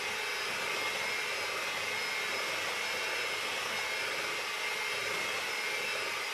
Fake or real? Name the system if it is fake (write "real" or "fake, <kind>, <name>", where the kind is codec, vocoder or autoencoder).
real